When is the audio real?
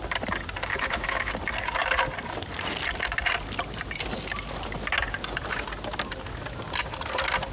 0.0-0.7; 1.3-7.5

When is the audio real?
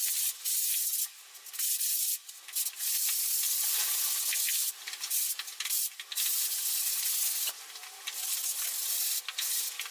0.0-9.9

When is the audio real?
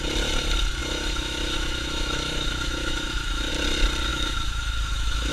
0.0-0.8; 3.5-4.1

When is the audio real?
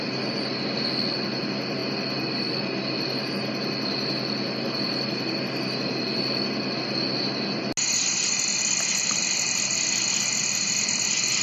0.0-11.4